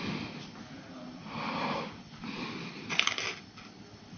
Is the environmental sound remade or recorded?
recorded